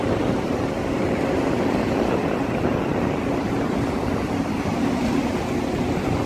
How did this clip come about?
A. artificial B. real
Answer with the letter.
B